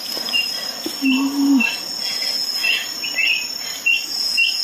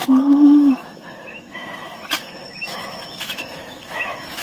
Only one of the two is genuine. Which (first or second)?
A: first